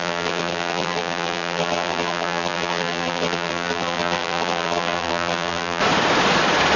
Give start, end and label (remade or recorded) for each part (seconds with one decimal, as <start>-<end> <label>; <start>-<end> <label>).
0.0-5.8 remade; 5.8-6.8 recorded